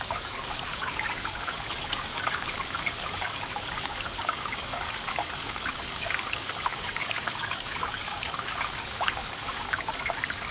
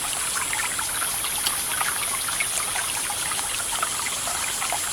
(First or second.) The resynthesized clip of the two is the first